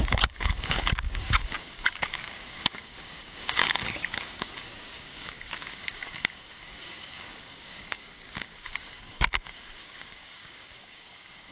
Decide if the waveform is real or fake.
fake